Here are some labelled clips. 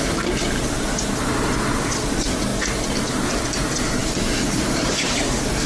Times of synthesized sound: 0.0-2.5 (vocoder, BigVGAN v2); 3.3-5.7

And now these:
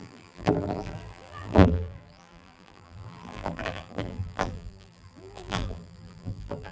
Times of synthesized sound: 0.0-6.7 (vocoder, BigVGAN v2)